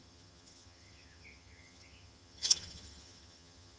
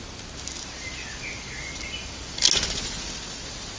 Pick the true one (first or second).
second